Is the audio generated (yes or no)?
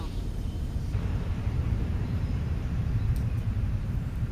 yes